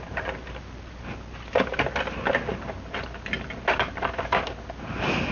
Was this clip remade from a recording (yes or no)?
no